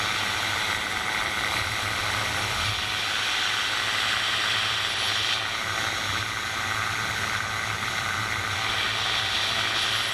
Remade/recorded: recorded